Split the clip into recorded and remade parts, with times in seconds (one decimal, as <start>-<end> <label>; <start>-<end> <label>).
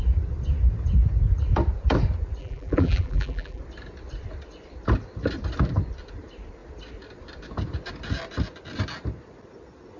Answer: 0.0-2.4 recorded; 2.4-3.6 remade; 3.6-10.0 recorded